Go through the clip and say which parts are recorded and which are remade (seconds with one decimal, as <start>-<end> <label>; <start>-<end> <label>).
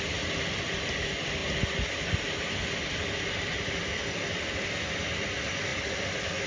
0.0-6.5 recorded